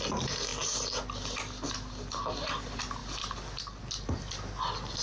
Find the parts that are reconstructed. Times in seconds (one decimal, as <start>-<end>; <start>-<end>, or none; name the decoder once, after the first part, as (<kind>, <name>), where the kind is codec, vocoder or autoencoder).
none